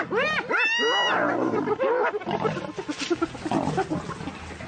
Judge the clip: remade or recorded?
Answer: recorded